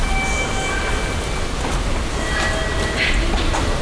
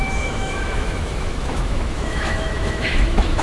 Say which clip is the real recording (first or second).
first